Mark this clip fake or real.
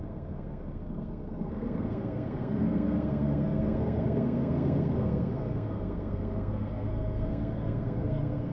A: fake